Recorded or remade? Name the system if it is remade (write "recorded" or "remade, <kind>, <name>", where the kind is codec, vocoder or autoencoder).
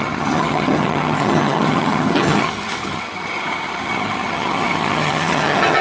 remade, vocoder, HiFi-GAN